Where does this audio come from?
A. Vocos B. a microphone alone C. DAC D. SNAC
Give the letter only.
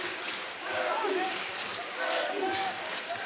C